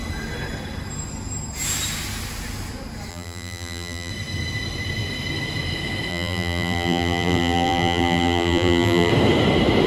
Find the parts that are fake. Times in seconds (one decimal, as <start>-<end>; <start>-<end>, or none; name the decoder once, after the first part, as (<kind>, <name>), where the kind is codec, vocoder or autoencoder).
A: 3.1-4.1 (vocoder, BigVGAN v2); 6.1-9.1